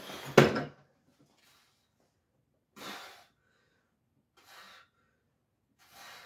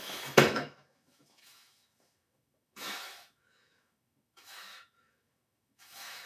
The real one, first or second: first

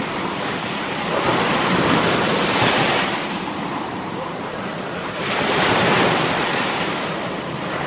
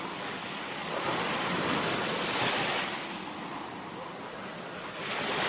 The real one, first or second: second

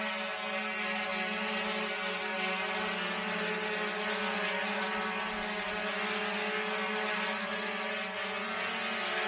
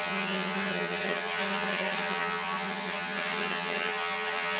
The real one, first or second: first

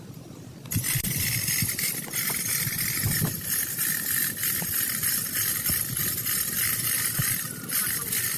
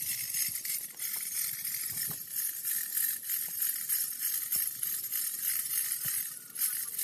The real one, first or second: second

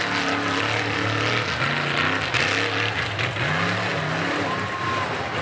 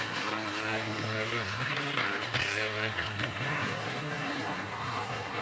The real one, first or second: first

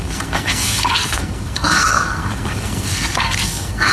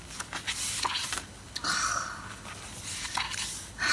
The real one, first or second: second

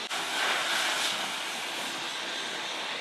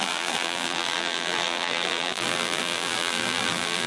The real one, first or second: first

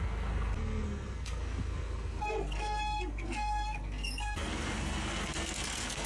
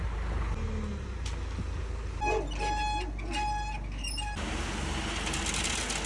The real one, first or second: second